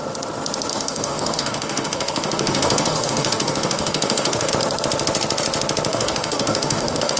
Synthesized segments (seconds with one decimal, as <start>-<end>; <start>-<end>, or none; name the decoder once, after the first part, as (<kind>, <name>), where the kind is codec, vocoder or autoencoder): 0.7-4.5 (codec, DAC); 5.9-7.2